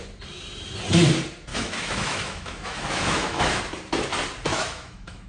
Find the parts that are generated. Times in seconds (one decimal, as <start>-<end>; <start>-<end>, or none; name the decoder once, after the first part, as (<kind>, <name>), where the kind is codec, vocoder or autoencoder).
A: 1.5-3.6 (autoencoder, DAC-VAE); 4.5-5.3